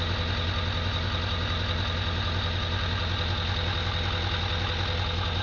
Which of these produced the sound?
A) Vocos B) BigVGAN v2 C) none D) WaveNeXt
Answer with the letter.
C